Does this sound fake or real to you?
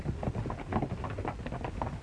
real